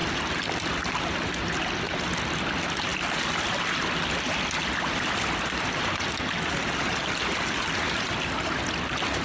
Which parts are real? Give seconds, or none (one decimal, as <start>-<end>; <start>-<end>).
0.0-9.2